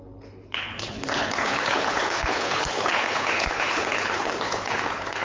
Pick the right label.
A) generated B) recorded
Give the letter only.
A